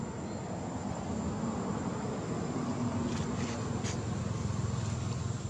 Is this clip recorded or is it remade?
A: recorded